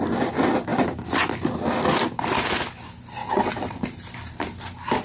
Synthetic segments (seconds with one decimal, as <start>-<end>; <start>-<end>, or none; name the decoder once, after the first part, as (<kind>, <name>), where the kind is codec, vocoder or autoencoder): 3.2-3.8 (vocoder, WaveNeXt)